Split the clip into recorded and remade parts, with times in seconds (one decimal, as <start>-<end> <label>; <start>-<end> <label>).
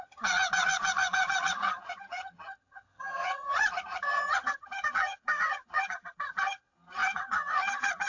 0.0-8.1 remade